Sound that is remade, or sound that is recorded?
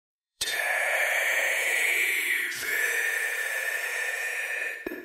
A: remade